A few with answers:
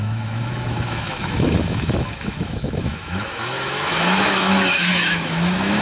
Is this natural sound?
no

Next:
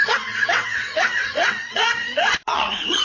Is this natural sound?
no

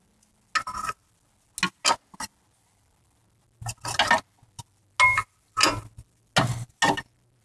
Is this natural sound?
yes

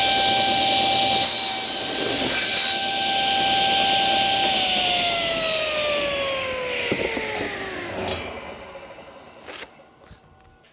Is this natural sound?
yes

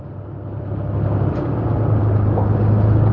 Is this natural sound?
yes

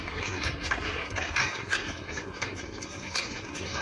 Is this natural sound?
no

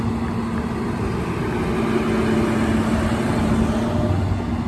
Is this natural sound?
yes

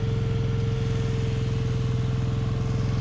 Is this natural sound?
yes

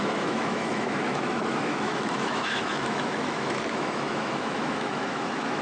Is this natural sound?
no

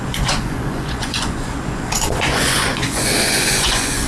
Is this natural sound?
no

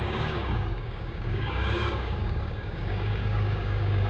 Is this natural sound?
no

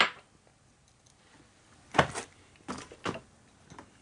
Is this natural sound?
yes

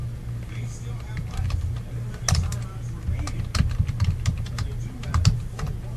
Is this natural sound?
yes